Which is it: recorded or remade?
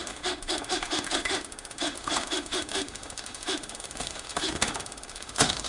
remade